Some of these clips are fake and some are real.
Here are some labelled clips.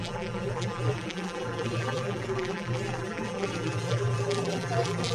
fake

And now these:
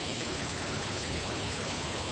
fake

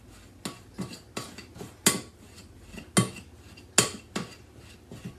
real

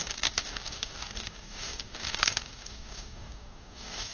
fake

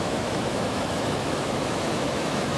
fake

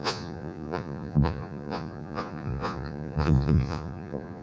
fake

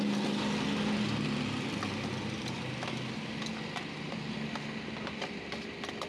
real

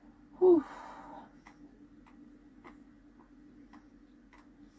real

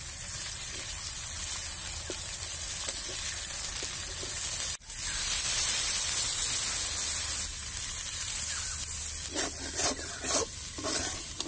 real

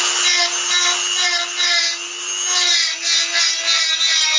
real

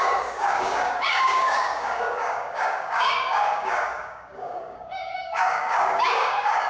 fake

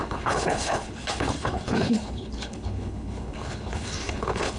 fake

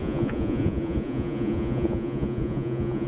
fake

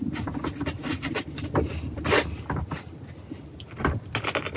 real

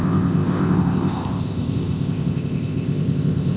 fake